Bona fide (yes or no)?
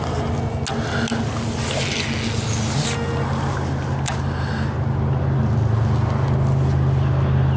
yes